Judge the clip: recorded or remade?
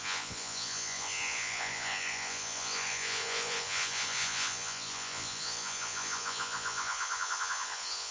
remade